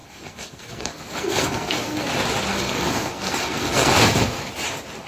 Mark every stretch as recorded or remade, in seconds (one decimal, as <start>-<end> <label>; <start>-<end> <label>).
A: 0.0-2.1 remade; 2.1-2.5 recorded; 2.5-4.5 remade; 4.5-5.1 recorded